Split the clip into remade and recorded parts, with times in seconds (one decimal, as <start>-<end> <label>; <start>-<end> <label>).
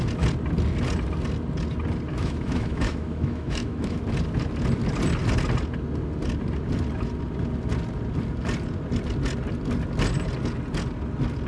0.0-2.1 recorded; 2.1-4.0 remade; 4.0-11.5 recorded